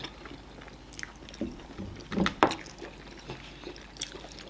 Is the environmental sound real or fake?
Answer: real